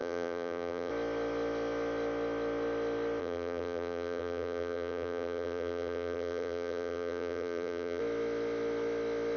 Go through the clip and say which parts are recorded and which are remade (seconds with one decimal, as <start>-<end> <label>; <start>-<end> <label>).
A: 0.0-0.9 remade; 0.9-3.2 recorded; 3.2-8.0 remade; 8.0-9.4 recorded